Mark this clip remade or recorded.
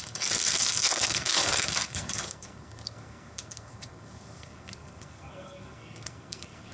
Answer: remade